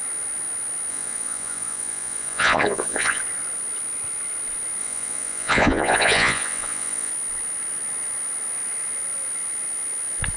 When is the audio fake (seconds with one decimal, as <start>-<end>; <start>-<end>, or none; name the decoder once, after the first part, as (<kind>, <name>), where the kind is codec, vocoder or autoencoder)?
0.9-3.2 (vocoder, Vocos); 4.8-7.1